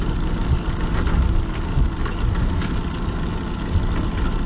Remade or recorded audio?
recorded